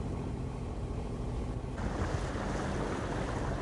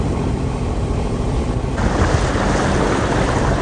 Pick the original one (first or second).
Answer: first